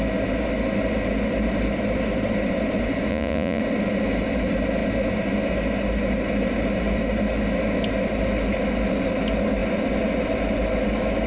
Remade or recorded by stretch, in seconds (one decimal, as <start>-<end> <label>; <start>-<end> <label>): 0.0-3.1 recorded; 3.1-3.6 remade; 3.6-11.3 recorded